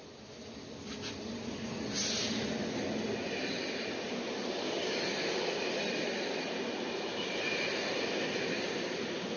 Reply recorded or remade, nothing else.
recorded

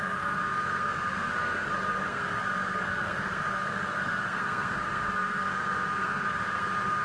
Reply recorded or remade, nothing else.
remade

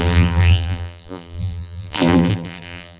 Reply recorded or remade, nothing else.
remade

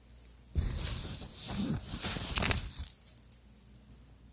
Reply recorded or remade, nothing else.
recorded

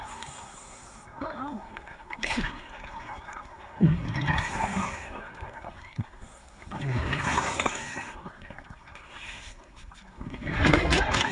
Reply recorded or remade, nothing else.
remade